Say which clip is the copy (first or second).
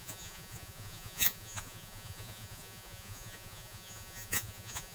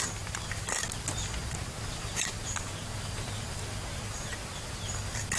first